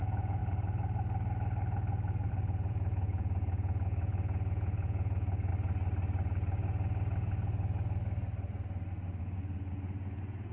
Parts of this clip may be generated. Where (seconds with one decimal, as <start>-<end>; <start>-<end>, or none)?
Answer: 0.0-0.4; 2.3-5.5; 9.2-10.5